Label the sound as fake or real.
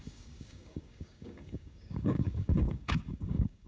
fake